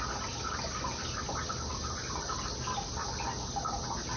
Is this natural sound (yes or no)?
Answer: yes